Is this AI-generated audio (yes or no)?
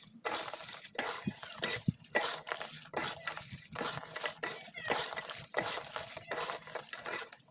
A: no